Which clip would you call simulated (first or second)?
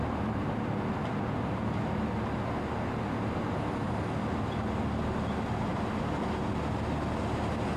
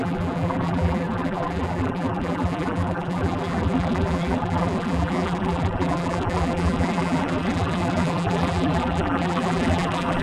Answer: second